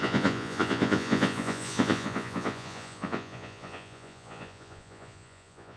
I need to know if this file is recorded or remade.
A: remade